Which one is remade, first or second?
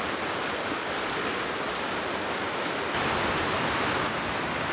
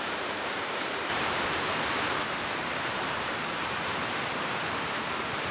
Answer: second